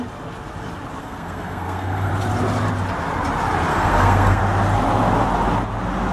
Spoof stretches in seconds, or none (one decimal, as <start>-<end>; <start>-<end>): 1.0-2.1; 3.7-4.4